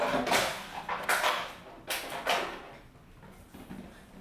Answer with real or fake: real